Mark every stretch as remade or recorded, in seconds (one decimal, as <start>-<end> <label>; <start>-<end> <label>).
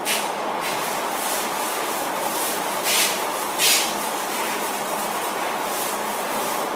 0.0-0.7 recorded; 0.7-3.0 remade; 3.0-4.1 recorded; 4.1-4.8 remade; 4.8-6.8 recorded